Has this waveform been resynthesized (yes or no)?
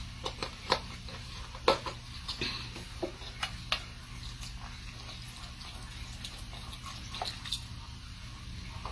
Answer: no